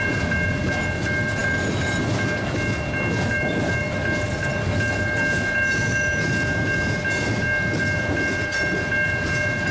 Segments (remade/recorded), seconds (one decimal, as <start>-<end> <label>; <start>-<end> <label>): 0.0-9.7 recorded